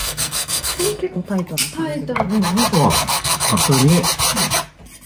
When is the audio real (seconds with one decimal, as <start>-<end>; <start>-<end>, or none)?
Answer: 1.3-3.0; 3.6-5.1